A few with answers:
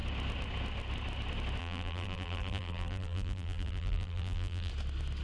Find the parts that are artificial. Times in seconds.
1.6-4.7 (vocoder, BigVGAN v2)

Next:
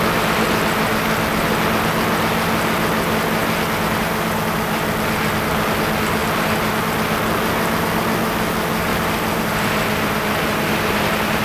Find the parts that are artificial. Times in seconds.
8.9-11.0 (vocoder, BigVGAN v2)

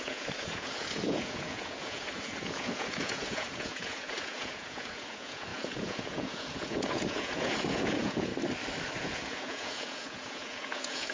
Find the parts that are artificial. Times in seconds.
0.0-8.3 (vocoder, Vocos); 9.0-11.1

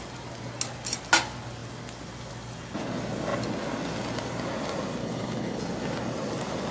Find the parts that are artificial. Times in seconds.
5.0-5.6 (codec, HILCodec)

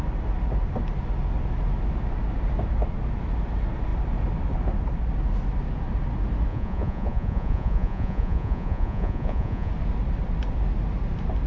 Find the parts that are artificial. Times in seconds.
6.5-9.7 (vocoder, Vocos)

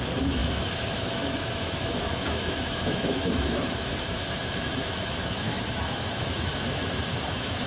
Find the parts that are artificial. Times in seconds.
0.0-6.8 (autoencoder, DAC-VAE); 7.3-7.7

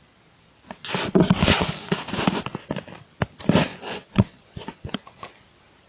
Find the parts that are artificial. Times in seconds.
1.4-2.0 (vocoder, Vocos); 3.7-5.3

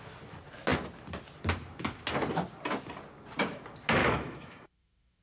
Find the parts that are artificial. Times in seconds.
4.0-5.2 (autoencoder, DAC-VAE)